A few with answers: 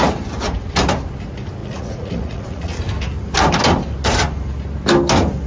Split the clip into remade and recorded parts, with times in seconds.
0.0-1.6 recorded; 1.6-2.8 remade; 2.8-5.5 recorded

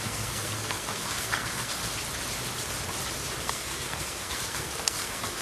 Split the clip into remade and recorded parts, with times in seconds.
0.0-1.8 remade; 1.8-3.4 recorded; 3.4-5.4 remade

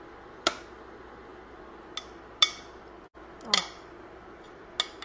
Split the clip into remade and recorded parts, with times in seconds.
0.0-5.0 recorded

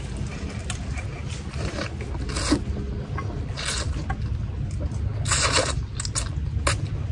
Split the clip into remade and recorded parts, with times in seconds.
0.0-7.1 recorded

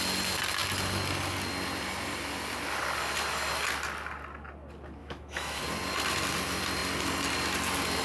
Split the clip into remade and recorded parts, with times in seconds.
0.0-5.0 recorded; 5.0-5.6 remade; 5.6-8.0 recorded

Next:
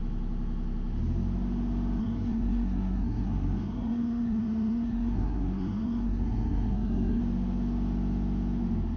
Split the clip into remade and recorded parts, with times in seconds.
0.0-2.0 recorded; 2.0-7.2 remade; 7.2-9.0 recorded

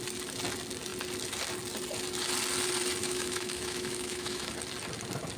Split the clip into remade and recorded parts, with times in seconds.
0.0-3.0 recorded; 3.0-4.5 remade; 4.5-5.4 recorded